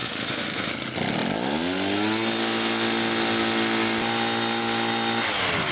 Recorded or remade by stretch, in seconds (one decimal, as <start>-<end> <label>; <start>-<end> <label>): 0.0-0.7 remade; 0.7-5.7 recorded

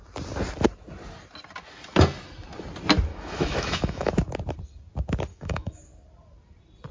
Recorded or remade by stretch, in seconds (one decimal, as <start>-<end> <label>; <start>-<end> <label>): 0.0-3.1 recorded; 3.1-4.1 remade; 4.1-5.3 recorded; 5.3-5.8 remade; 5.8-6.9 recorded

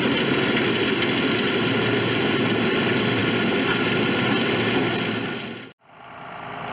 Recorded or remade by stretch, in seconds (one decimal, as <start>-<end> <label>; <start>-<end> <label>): 0.0-6.7 recorded

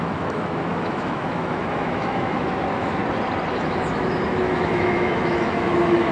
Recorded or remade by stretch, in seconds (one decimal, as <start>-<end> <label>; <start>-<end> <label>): 0.0-3.0 remade; 3.0-3.5 recorded; 3.5-6.1 remade